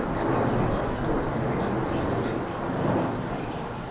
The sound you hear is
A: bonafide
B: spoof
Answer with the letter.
A